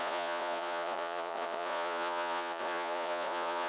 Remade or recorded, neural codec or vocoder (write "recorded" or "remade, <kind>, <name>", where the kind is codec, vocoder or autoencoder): remade, vocoder, Vocos